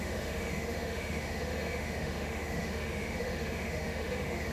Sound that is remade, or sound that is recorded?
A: remade